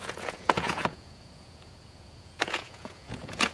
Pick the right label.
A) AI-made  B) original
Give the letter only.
A